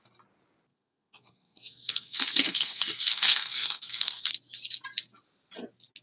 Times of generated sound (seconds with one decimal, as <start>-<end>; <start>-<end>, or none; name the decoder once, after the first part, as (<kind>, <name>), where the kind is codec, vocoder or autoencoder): 0.7-4.3 (codec, SNAC)